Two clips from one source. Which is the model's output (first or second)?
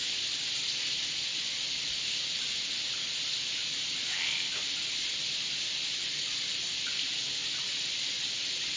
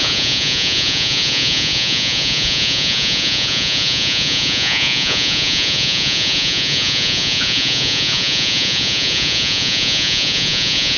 second